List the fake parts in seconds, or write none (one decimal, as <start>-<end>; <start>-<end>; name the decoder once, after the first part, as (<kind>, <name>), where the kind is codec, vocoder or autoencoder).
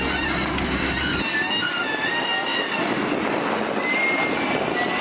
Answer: none